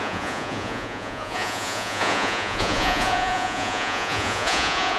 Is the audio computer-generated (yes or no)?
yes